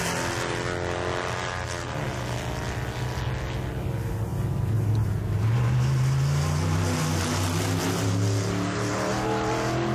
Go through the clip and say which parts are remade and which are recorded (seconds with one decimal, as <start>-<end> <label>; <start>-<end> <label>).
0.0-9.9 recorded